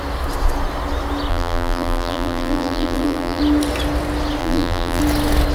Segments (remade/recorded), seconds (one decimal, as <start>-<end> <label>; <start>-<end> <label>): 0.0-1.3 recorded; 1.3-3.4 remade; 3.4-4.4 recorded; 4.4-5.0 remade; 5.0-5.5 recorded